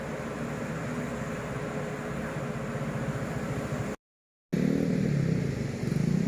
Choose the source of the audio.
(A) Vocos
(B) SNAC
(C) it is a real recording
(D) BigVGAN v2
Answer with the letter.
C